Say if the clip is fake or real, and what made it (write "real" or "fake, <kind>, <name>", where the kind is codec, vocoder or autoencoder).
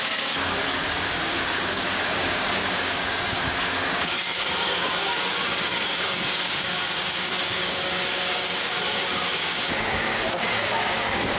fake, codec, DAC